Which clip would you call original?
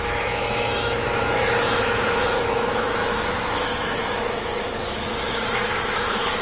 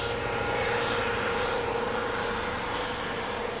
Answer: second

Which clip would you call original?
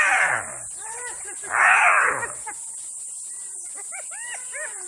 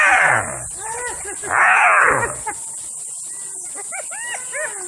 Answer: second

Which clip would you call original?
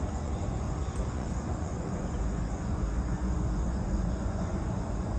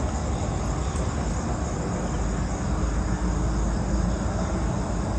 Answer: second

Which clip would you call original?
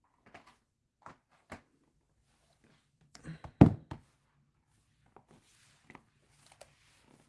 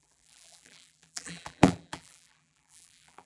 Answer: first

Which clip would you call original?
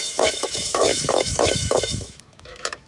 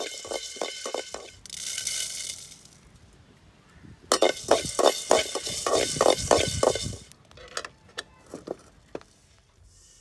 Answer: second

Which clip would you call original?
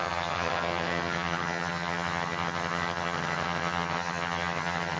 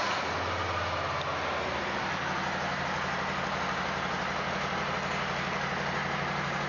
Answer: second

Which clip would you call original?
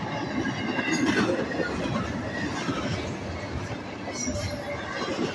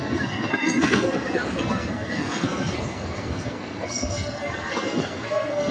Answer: first